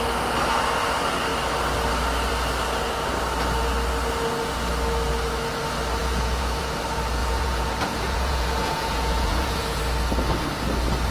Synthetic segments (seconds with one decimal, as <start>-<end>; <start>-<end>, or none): 6.0-6.8; 7.2-9.8